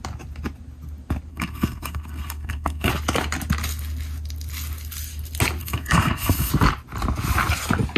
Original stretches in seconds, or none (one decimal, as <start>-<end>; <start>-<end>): 0.0-1.3; 2.9-5.6; 6.5-8.0